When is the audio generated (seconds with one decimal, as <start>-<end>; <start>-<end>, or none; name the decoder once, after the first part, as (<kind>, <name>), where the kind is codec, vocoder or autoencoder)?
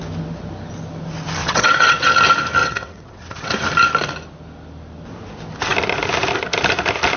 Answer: 1.4-2.1 (vocoder, WaveNeXt); 2.6-3.5